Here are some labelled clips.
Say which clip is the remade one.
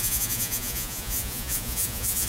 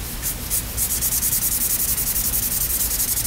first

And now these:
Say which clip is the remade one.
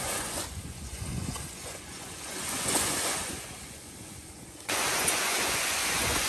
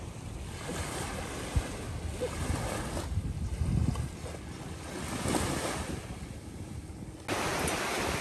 first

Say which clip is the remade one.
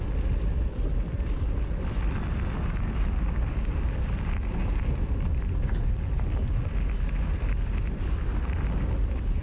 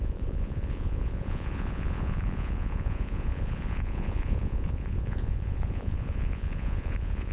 second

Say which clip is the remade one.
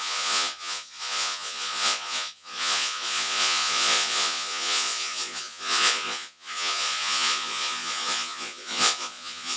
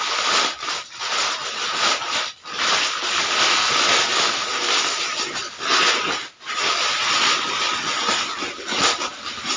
first